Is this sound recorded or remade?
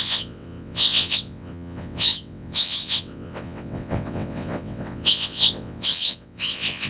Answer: remade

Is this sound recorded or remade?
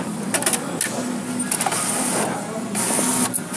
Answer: recorded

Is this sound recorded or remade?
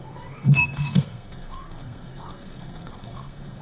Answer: remade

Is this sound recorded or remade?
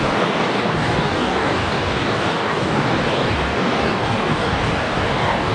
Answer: remade